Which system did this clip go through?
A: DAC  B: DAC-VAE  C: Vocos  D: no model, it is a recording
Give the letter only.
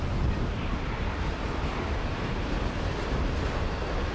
D